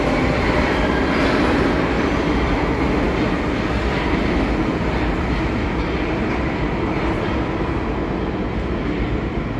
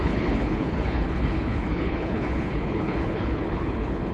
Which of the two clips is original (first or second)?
first